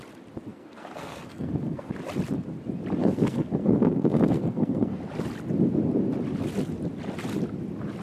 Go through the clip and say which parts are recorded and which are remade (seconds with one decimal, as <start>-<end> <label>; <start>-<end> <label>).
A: 0.0-0.5 recorded; 0.5-1.9 remade; 1.9-3.0 recorded; 3.0-5.0 remade; 5.0-8.0 recorded